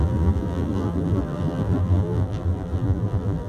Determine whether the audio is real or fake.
fake